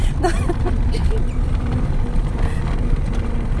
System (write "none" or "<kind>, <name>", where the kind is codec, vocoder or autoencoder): none